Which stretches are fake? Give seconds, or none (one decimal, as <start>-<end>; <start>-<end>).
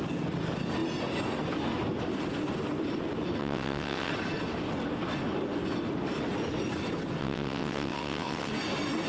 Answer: 3.4-4.1; 7.2-8.5